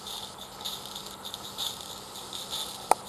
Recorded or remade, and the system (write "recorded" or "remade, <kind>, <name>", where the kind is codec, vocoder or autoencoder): recorded